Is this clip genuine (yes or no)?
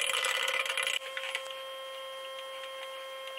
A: yes